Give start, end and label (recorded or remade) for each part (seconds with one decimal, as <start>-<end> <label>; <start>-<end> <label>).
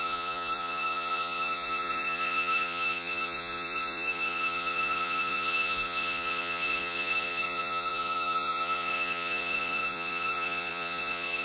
0.0-11.4 remade